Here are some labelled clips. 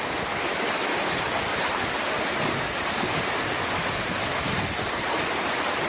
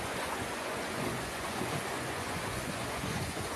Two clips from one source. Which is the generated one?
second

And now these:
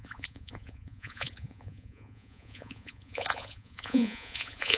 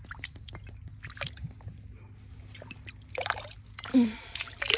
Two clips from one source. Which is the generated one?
first